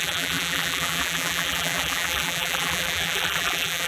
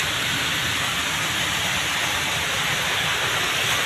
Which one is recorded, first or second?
second